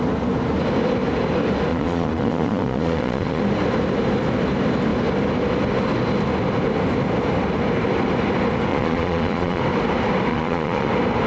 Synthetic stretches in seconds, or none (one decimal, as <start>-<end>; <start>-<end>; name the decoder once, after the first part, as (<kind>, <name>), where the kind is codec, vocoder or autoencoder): 1.7-3.4 (vocoder, Vocos); 8.7-9.6; 10.3-10.9